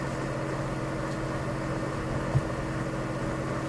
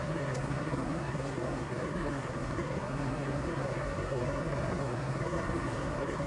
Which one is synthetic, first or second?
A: second